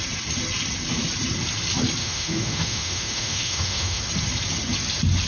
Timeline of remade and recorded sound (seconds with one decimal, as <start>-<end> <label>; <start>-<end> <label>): 0.0-2.0 recorded; 2.0-4.0 remade; 4.0-5.3 recorded